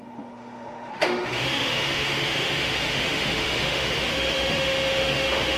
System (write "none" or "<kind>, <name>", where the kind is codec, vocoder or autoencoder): autoencoder, DAC-VAE